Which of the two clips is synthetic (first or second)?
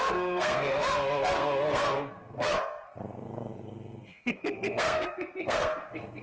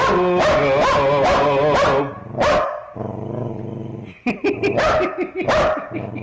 first